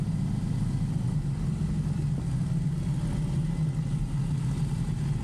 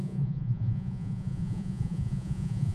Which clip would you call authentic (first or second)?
first